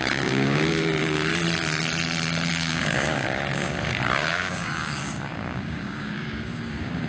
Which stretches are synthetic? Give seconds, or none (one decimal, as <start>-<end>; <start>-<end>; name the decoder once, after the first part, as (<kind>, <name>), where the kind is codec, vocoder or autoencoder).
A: 0.0-1.3 (codec, DAC); 2.5-7.1

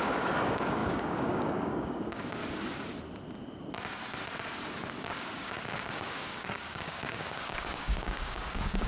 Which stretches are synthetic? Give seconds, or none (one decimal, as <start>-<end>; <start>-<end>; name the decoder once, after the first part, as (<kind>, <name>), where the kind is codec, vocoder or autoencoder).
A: 0.0-2.4 (codec, DAC); 5.1-8.9

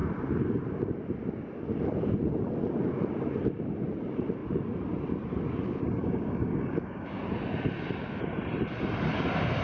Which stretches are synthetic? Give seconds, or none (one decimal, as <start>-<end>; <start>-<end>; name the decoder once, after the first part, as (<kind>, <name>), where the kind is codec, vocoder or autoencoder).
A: 6.0-7.2 (codec, DAC)

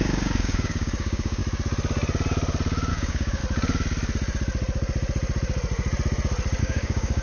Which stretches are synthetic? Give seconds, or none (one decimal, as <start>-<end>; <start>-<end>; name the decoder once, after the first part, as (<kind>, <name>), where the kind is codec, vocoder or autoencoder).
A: 0.0-1.4 (codec, DAC); 2.9-3.4; 6.6-7.2

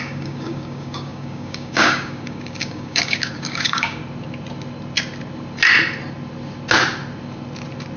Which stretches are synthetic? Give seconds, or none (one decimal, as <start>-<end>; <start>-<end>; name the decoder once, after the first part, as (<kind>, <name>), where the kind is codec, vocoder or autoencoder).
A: 0.0-4.0 (codec, DAC)

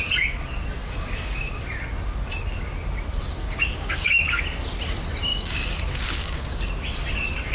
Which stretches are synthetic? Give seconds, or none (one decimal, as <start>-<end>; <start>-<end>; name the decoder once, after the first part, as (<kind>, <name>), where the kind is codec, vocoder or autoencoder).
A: 0.8-1.6 (codec, DAC); 3.4-4.4; 5.3-6.6

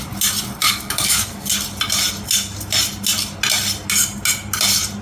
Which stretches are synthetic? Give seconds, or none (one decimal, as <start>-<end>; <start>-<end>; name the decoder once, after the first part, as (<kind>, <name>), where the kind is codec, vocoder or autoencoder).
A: 0.6-1.5 (codec, DAC)

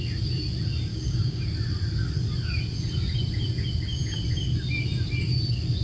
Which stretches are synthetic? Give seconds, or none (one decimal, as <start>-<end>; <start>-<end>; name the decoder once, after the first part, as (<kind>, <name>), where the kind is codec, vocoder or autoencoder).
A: 0.9-1.5 (codec, DAC)